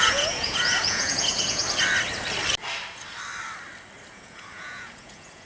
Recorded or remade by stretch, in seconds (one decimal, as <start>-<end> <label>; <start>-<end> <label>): 0.0-1.6 remade; 1.6-4.1 recorded; 4.1-5.5 remade